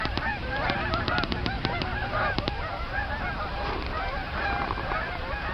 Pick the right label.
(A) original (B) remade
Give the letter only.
B